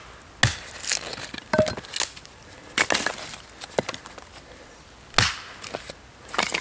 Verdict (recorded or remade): recorded